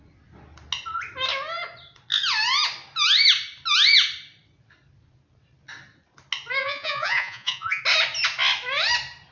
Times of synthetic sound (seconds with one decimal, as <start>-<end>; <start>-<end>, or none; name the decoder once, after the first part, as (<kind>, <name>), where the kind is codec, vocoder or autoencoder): 6.6-7.8 (vocoder, Vocos)

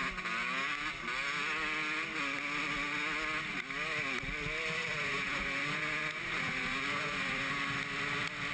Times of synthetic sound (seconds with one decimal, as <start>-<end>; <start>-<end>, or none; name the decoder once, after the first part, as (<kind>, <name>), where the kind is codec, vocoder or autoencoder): 4.9-7.6 (vocoder, Vocos)

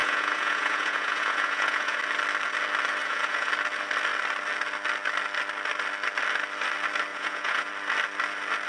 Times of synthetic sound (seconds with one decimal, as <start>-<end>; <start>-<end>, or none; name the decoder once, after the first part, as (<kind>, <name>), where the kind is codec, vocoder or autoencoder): 0.0-2.0 (vocoder, Vocos); 3.0-3.5; 7.1-7.7

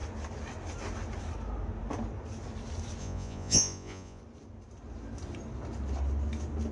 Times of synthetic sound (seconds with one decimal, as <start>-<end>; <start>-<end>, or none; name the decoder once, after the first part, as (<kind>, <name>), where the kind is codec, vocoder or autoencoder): 3.0-4.2 (vocoder, Vocos)

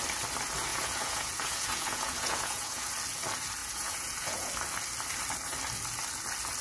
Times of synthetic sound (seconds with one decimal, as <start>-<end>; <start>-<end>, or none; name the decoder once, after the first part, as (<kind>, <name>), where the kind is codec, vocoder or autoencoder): 0.7-2.9 (vocoder, Vocos); 3.6-4.5

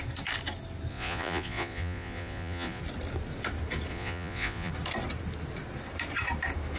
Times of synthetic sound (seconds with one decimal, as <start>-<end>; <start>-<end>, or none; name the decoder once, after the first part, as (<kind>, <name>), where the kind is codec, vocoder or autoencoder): 0.9-2.8 (vocoder, Vocos); 3.9-4.7